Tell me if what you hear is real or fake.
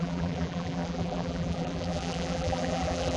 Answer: fake